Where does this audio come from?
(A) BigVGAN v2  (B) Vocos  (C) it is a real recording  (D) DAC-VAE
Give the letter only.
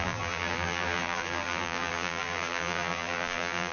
A